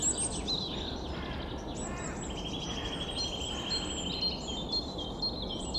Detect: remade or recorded recorded